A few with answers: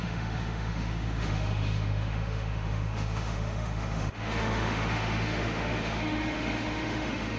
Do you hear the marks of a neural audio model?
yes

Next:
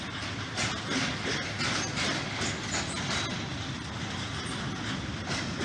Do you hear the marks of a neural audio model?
no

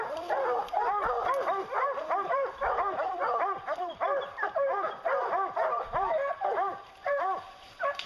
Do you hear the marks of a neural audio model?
yes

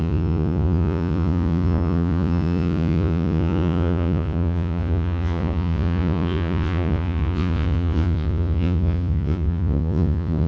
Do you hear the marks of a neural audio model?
yes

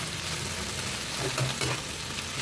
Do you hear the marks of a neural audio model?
no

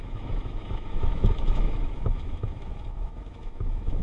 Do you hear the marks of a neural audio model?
yes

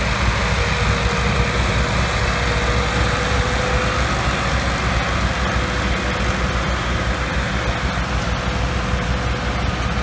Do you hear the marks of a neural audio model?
no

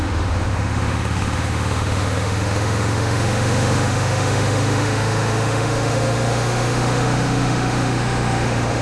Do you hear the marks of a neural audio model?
yes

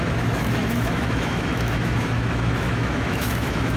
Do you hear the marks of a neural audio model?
yes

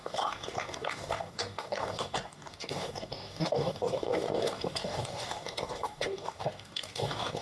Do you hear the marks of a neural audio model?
yes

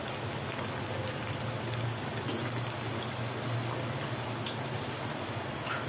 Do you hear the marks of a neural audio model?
no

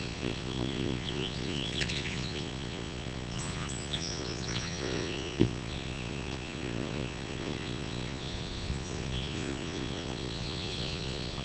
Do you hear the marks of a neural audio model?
yes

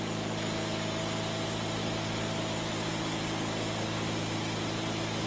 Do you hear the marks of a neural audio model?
no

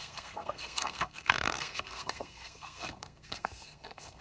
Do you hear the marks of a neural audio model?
yes